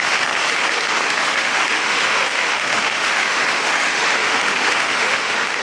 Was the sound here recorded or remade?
remade